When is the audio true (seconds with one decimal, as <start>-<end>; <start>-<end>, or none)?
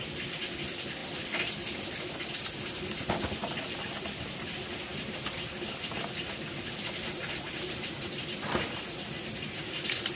0.0-10.2